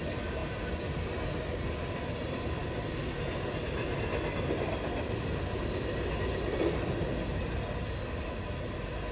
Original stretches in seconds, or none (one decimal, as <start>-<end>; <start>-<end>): 0.0-9.1